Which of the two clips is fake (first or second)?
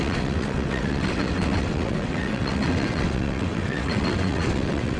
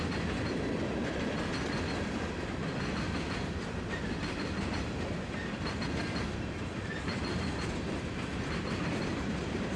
first